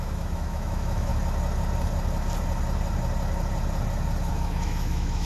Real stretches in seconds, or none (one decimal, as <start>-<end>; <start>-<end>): 1.1-4.3